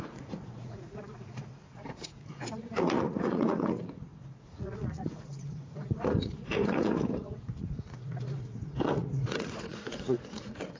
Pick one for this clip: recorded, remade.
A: remade